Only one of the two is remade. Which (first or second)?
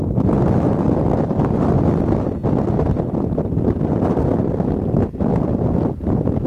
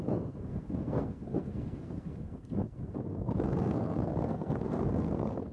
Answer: second